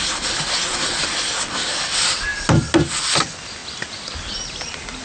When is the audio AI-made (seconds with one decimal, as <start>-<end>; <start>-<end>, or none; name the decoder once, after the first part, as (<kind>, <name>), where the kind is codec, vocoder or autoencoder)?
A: none